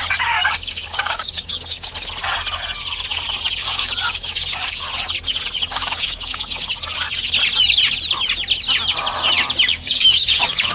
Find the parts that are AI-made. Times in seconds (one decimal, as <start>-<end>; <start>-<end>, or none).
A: 0.4-1.9; 3.6-4.8; 5.7-6.7; 9.7-10.7